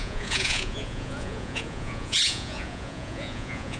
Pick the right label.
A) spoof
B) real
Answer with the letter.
A